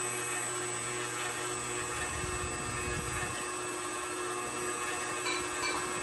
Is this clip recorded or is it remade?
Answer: recorded